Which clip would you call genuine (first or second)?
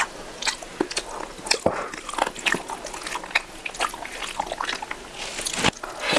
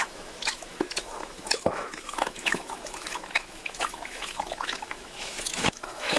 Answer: first